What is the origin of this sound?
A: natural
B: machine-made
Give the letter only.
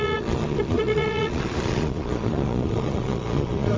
B